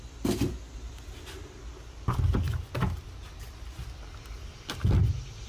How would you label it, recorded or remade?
recorded